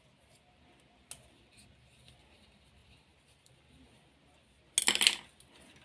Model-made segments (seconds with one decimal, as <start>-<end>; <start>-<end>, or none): none